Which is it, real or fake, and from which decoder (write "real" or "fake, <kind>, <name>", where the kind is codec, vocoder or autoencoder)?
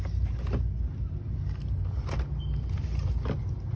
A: real